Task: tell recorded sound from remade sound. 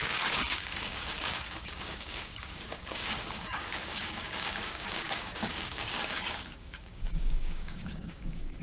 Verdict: remade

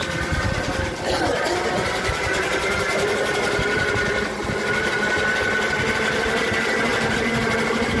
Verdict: recorded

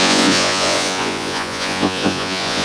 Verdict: remade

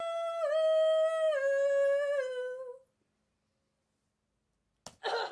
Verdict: recorded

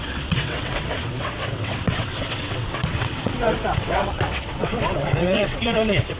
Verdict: remade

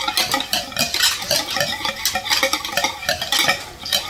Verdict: recorded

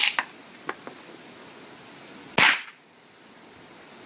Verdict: recorded